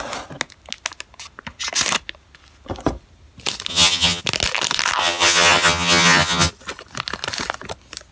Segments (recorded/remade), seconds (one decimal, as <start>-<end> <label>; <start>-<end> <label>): 0.0-3.7 recorded; 3.7-4.2 remade; 4.2-5.0 recorded; 5.0-6.5 remade; 6.5-8.1 recorded